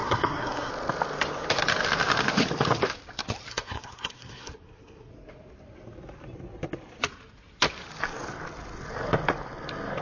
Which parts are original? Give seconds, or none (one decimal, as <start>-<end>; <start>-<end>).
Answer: 0.7-3.5; 5.1-10.0